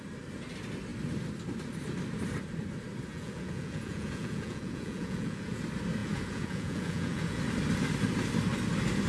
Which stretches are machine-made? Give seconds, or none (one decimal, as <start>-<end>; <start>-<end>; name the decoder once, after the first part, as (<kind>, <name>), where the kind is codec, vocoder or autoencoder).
3.1-5.6 (vocoder, Vocos); 6.0-7.4